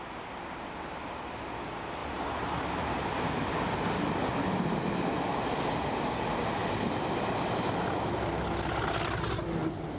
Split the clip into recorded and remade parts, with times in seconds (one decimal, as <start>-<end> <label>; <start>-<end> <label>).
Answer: 0.0-10.0 recorded